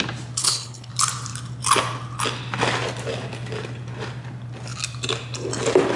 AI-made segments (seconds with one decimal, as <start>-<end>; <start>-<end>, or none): 0.4-0.9